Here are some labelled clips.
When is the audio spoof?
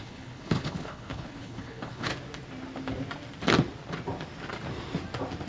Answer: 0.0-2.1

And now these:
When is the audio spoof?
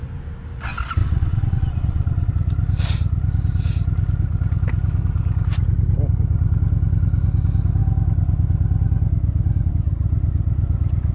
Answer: 1.0-2.3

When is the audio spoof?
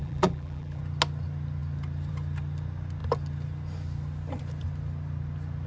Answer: 0.0-0.8